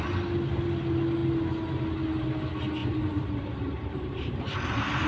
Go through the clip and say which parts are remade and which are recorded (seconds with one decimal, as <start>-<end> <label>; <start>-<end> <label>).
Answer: 0.0-2.8 recorded; 2.8-5.1 remade